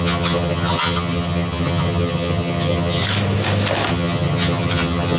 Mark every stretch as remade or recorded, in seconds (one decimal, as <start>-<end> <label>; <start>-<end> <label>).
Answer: 0.0-3.0 remade; 3.0-3.9 recorded; 3.9-5.2 remade

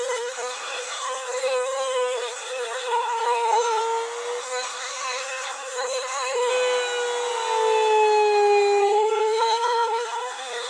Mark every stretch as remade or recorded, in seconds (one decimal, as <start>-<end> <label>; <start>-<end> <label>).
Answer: 0.0-3.8 remade; 3.8-4.4 recorded; 4.4-6.5 remade; 6.5-8.8 recorded; 8.8-10.7 remade

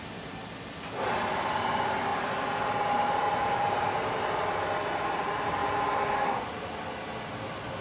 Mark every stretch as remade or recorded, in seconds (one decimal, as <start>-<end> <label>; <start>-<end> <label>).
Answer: 0.0-7.8 recorded

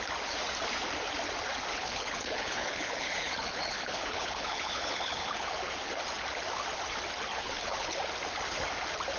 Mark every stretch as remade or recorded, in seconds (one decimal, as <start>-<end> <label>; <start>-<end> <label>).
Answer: 0.0-1.7 recorded; 1.7-5.9 remade; 5.9-7.3 recorded; 7.3-8.0 remade; 8.0-9.2 recorded

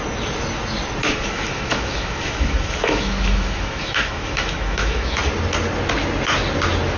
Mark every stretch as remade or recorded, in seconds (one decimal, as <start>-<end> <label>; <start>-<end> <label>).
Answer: 0.0-1.0 recorded; 1.0-5.2 remade; 5.2-7.0 recorded

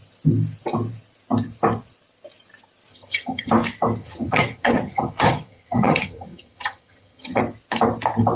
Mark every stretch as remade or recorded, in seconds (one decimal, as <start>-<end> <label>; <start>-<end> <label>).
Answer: 0.0-2.9 recorded; 2.9-3.5 remade; 3.5-4.0 recorded; 4.0-7.4 remade; 7.4-8.4 recorded

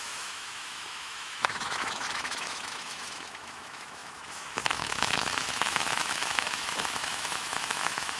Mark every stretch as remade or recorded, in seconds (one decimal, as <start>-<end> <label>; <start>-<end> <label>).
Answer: 0.0-8.2 remade